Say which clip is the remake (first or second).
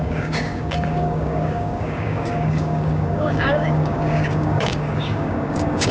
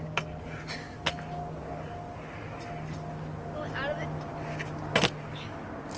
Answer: first